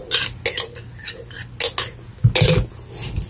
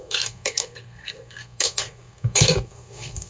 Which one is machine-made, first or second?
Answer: second